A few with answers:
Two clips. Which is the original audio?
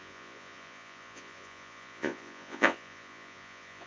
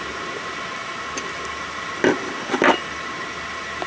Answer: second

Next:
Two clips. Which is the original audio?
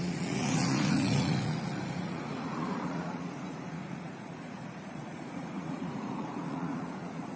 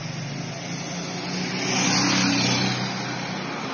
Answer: second